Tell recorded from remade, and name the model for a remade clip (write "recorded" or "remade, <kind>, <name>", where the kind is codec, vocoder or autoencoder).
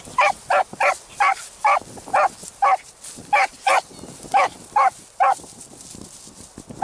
recorded